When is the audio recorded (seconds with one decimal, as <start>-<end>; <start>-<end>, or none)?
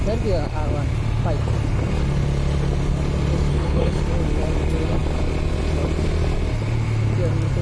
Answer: 0.0-3.5; 4.0-7.6